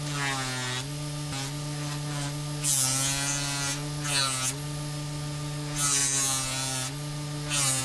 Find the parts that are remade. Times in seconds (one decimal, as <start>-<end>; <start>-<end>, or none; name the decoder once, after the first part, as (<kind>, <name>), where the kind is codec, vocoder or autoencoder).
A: none